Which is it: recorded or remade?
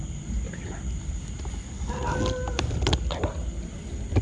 recorded